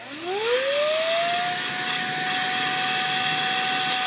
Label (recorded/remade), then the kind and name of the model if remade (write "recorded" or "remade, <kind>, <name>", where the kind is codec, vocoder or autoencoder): recorded